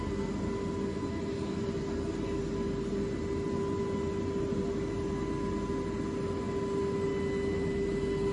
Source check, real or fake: real